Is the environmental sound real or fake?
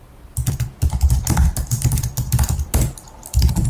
real